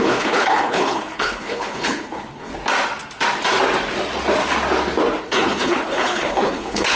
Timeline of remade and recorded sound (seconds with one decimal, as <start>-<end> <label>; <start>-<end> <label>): 0.0-2.5 remade; 2.5-5.2 recorded; 5.2-7.0 remade